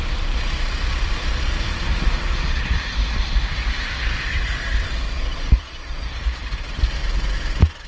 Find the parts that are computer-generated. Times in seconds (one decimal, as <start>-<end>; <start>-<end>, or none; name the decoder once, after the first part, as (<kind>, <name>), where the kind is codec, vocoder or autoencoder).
0.0-7.9 (vocoder, BigVGAN v2)